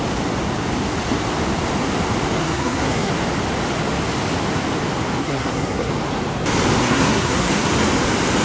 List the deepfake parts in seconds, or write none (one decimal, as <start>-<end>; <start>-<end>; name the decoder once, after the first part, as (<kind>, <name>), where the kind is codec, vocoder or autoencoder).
2.4-3.1 (codec, SNAC); 5.2-5.9; 6.8-7.7